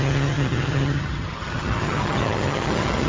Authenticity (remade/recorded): remade